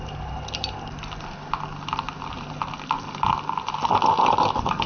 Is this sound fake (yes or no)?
no